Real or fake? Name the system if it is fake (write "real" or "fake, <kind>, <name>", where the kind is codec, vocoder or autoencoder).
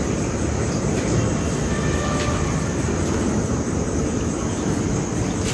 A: real